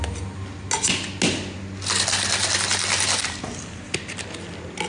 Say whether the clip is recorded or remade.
recorded